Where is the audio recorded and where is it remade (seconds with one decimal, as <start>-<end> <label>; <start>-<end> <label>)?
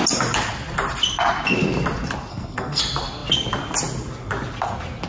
0.0-2.3 recorded; 2.3-2.8 remade; 2.8-5.1 recorded